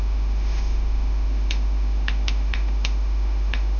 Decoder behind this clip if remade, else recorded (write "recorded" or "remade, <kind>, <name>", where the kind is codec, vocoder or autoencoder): remade, autoencoder, DAC-VAE